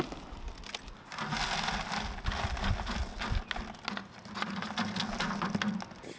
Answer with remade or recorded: recorded